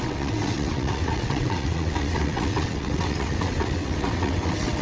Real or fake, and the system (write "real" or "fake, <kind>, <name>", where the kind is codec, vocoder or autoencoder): fake, vocoder, WaveNeXt